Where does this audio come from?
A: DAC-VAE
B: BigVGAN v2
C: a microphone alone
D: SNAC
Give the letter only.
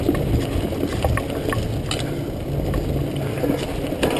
C